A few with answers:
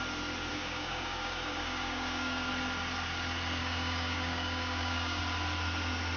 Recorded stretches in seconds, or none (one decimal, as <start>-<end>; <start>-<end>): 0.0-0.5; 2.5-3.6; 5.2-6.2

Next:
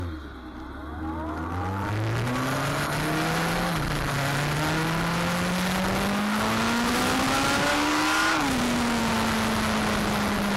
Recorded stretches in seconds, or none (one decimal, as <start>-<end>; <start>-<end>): 0.0-7.7; 9.0-10.6

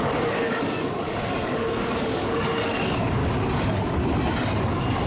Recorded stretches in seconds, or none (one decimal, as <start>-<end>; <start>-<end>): 3.2-4.6

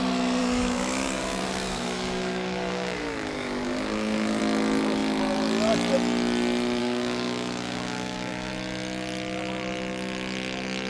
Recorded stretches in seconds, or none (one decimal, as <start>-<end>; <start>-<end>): 0.0-0.4; 4.4-6.8; 8.5-10.9